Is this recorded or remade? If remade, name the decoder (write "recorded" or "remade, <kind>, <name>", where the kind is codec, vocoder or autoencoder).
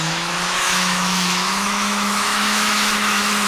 remade, autoencoder, DAC-VAE